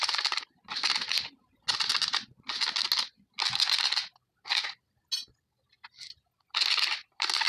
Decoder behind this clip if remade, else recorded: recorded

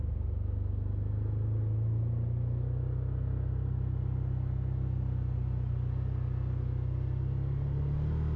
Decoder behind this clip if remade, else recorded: recorded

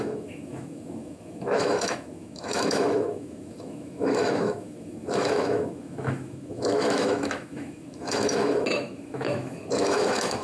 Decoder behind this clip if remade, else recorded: remade, autoencoder, DAC-VAE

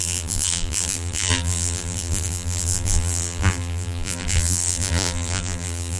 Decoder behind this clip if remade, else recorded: remade, vocoder, BigVGAN v2